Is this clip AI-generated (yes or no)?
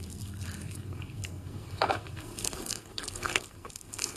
yes